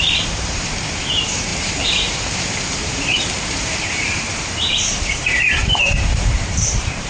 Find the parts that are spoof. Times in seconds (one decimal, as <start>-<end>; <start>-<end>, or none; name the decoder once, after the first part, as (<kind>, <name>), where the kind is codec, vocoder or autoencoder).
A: 0.0-7.1 (vocoder, BigVGAN v2)

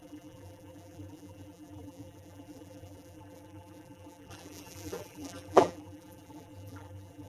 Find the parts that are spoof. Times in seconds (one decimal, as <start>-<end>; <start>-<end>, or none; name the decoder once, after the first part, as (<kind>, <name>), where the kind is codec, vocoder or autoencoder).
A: 0.0-7.3 (vocoder, BigVGAN v2)

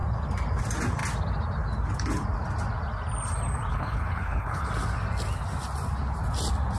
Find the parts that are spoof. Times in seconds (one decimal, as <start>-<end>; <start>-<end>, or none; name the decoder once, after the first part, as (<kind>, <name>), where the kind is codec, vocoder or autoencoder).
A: 3.7-4.7 (codec, HILCodec)

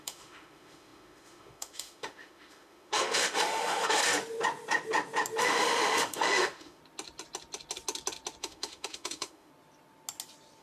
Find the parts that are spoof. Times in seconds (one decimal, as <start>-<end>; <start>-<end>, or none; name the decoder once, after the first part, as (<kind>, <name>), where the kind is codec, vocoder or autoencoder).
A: 0.0-4.0 (autoencoder, DAC-VAE); 5.4-6.8; 8.4-9.5

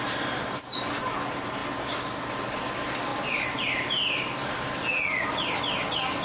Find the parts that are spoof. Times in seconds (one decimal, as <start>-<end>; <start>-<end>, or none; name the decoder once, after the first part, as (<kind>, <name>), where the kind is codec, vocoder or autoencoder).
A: 3.1-4.8 (vocoder, BigVGAN v2)

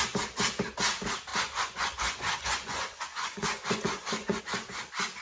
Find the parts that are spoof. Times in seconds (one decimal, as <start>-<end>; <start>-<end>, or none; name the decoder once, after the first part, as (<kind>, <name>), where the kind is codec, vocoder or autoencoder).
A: 1.3-4.4 (vocoder, Vocos)